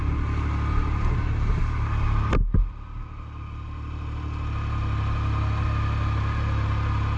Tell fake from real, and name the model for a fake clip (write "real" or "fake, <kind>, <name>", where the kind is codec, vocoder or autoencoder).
real